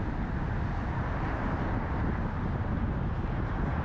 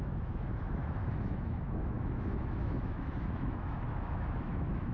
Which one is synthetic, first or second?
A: second